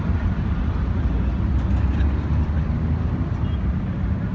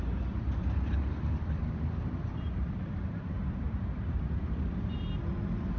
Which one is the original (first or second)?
first